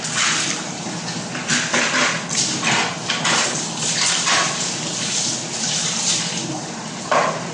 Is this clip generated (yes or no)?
no